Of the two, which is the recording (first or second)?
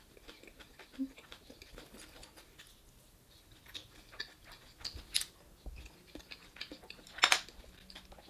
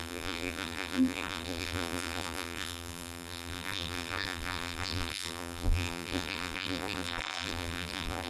first